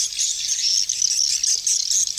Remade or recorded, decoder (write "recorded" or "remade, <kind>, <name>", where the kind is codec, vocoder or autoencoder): recorded